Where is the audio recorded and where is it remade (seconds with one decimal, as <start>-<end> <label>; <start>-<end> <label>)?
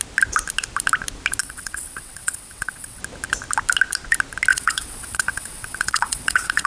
0.0-1.4 recorded; 1.4-3.0 remade; 3.0-4.5 recorded; 4.5-6.7 remade